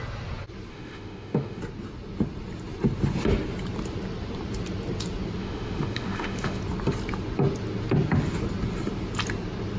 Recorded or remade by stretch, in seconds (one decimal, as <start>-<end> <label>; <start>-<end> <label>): 0.0-0.7 recorded; 0.7-1.6 remade; 1.6-5.4 recorded; 5.4-6.6 remade; 6.6-9.8 recorded